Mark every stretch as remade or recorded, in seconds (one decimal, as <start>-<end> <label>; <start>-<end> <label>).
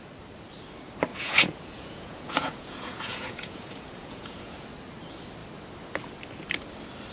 0.0-1.1 recorded; 1.1-4.7 remade; 4.7-7.1 recorded